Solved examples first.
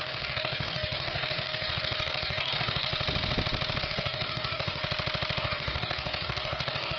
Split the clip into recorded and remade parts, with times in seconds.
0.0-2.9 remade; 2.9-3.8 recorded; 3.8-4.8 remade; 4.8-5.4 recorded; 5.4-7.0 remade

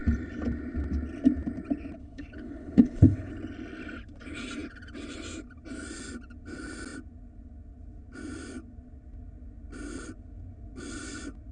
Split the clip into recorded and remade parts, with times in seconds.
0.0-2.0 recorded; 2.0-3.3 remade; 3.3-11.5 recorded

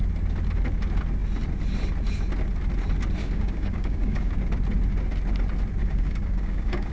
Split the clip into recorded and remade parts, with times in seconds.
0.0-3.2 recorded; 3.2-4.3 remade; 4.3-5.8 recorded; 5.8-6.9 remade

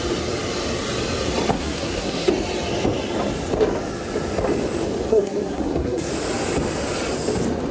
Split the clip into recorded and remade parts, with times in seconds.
0.0-1.5 recorded; 1.5-2.3 remade; 2.3-5.1 recorded; 5.1-6.1 remade; 6.1-7.7 recorded

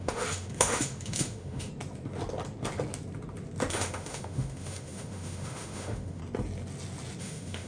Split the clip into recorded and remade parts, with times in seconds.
0.0-1.7 remade; 1.7-3.7 recorded; 3.7-6.2 remade; 6.2-7.2 recorded; 7.2-7.7 remade

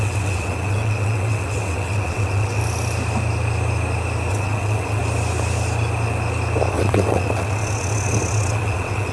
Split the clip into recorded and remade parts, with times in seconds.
0.0-2.6 remade; 2.6-4.3 recorded; 4.3-5.0 remade; 5.0-6.7 recorded; 6.7-9.1 remade